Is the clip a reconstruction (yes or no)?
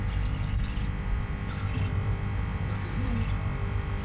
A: no